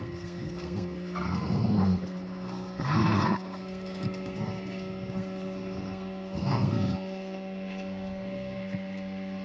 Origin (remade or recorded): remade